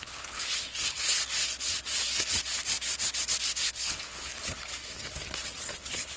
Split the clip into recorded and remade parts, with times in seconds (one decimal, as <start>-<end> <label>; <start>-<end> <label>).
0.0-1.2 remade; 1.2-3.5 recorded; 3.5-4.7 remade; 4.7-5.6 recorded; 5.6-6.2 remade